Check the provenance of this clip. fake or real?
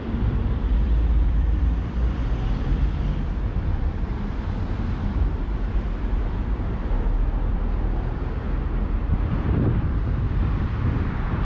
fake